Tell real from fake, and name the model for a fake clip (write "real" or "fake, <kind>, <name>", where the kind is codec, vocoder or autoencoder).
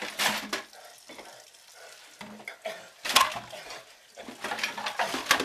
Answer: real